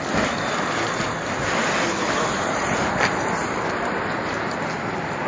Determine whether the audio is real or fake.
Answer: fake